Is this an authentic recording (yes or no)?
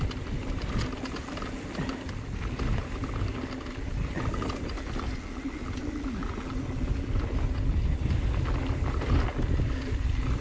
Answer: yes